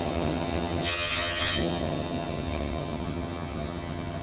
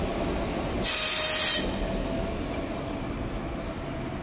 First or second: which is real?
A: second